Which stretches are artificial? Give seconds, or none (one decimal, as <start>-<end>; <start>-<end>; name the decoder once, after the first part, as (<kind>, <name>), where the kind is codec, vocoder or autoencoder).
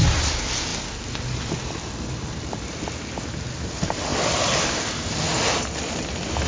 none